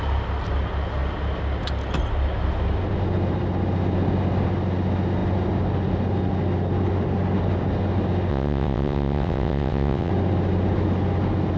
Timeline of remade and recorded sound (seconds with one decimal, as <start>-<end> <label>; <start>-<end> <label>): 0.0-8.3 recorded; 8.3-10.1 remade; 10.1-11.6 recorded

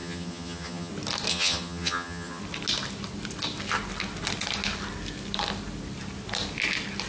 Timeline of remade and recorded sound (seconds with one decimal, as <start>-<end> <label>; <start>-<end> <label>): 0.0-0.9 remade; 0.9-1.3 recorded; 1.3-2.4 remade; 2.4-7.1 recorded

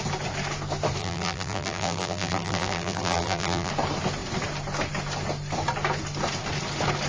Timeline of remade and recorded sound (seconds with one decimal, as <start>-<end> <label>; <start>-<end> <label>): 0.0-1.0 recorded; 1.0-3.7 remade; 3.7-7.1 recorded

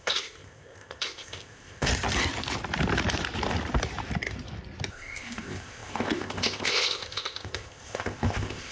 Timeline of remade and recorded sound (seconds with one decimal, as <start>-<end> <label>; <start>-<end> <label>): 0.0-1.9 remade; 1.9-4.9 recorded; 4.9-8.7 remade

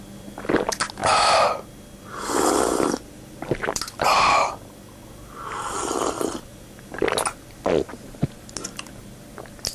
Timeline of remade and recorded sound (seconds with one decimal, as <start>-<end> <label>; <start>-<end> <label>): 0.0-9.7 recorded

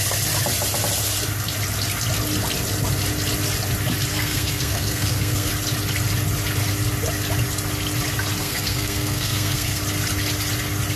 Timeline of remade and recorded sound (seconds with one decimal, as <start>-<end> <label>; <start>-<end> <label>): 0.0-4.1 recorded; 4.1-5.5 remade; 5.5-8.4 recorded; 8.4-9.8 remade; 9.8-11.0 recorded

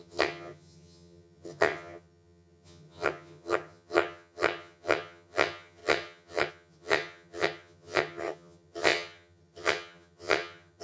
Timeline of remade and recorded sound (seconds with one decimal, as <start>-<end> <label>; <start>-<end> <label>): 0.0-10.8 remade

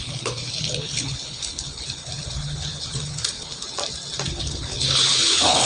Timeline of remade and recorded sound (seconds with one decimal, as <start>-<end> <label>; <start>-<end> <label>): 0.0-3.6 remade; 3.6-4.3 recorded; 4.3-5.7 remade